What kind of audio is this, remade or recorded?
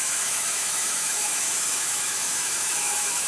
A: remade